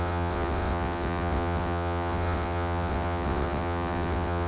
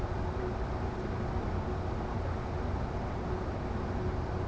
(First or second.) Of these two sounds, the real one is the second